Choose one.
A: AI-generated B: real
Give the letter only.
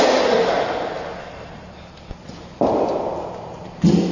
B